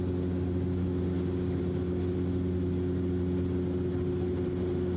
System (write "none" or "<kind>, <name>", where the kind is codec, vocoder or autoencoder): none